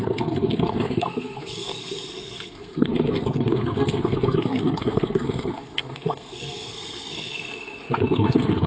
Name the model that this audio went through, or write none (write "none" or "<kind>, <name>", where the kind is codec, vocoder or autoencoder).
codec, SNAC